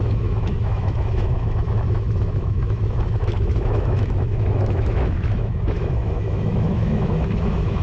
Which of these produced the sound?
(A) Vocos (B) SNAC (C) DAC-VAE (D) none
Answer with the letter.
C